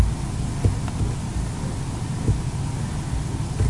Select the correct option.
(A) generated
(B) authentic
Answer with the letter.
B